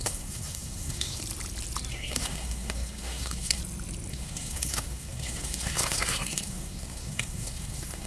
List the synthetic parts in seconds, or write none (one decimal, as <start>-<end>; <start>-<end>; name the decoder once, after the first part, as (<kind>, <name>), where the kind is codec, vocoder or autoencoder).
0.0-1.2 (codec, SNAC); 1.9-3.6; 4.1-8.1